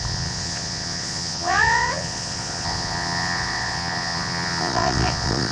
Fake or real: fake